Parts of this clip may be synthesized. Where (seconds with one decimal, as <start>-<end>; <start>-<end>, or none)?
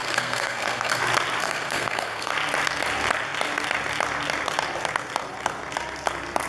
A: 0.0-1.0; 1.4-2.3